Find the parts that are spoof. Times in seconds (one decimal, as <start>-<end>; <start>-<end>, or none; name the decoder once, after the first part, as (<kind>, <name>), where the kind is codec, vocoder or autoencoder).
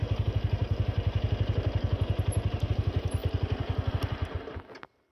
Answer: none